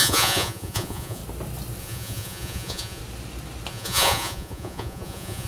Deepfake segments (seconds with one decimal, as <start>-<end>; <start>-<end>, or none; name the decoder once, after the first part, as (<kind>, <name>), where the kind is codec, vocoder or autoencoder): 0.0-1.2 (vocoder, Vocos); 1.8-3.0; 3.7-5.5